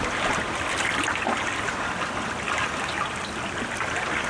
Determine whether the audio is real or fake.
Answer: real